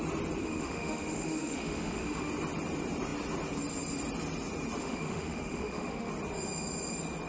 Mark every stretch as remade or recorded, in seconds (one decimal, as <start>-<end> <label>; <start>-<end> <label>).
0.0-0.4 recorded; 0.4-2.3 remade; 2.3-4.8 recorded; 4.8-6.1 remade; 6.1-7.3 recorded